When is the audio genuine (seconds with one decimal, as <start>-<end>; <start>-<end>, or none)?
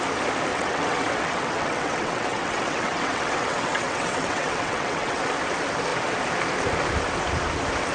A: 0.0-0.5; 5.2-7.9